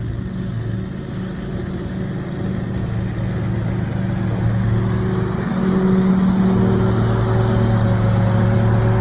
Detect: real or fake real